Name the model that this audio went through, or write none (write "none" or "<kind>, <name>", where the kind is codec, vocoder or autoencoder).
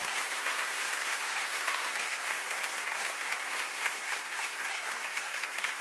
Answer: codec, SNAC